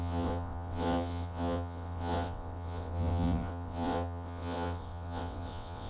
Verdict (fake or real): fake